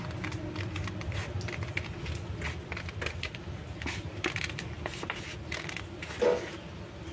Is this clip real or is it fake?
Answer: real